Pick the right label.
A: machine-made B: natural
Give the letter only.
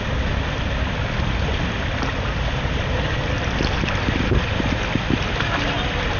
B